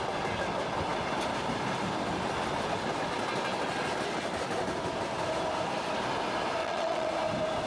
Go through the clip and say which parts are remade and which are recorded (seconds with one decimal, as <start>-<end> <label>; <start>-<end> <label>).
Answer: 0.0-6.6 recorded; 6.6-7.1 remade; 7.1-7.7 recorded